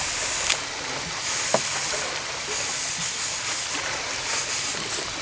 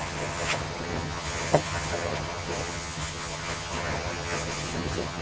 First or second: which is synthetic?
second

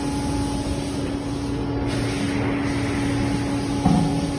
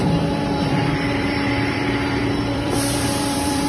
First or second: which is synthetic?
second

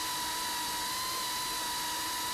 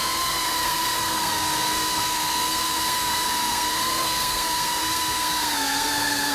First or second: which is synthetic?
second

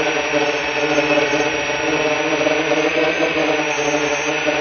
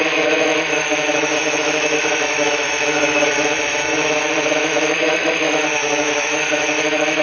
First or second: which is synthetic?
second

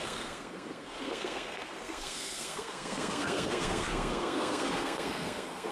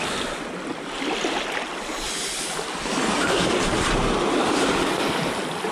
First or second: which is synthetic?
first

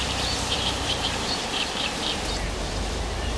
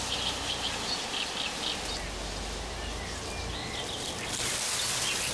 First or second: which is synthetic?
first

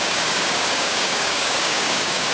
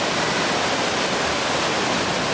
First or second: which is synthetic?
first